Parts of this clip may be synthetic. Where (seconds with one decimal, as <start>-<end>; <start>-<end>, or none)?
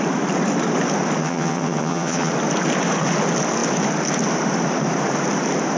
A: 1.2-2.3